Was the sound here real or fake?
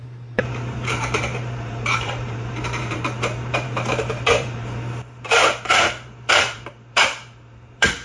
fake